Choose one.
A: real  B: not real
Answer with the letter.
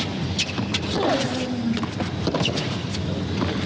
A